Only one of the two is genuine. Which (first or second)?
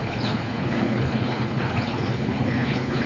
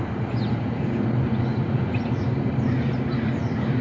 second